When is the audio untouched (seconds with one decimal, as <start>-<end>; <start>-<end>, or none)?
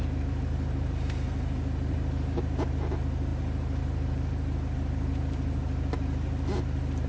0.0-7.1